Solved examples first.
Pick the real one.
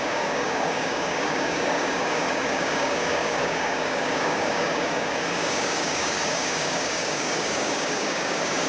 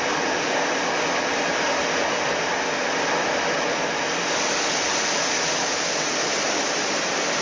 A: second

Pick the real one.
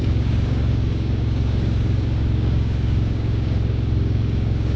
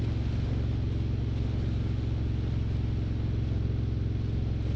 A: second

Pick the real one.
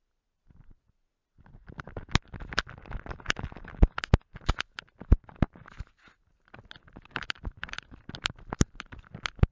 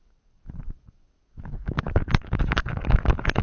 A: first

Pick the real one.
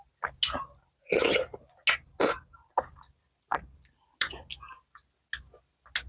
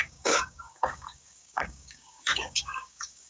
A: first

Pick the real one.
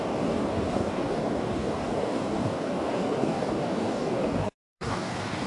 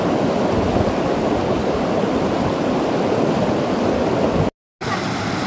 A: second